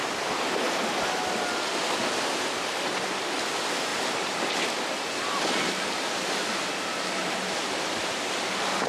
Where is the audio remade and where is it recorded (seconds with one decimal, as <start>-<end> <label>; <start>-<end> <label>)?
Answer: 0.0-3.9 recorded; 3.9-4.4 remade; 4.4-7.2 recorded; 7.2-8.2 remade; 8.2-8.9 recorded